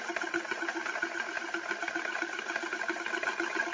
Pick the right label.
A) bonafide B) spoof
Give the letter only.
A